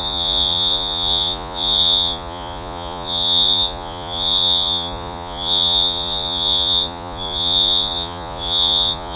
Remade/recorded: remade